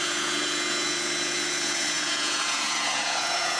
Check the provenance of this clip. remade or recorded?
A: remade